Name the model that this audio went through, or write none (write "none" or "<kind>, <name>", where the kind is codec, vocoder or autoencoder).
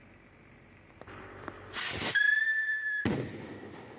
vocoder, BigVGAN v2